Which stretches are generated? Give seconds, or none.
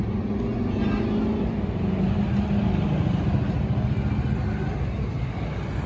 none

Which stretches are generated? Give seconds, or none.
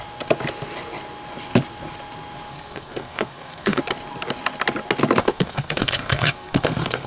2.5-3.8 (codec, SNAC); 5.2-7.1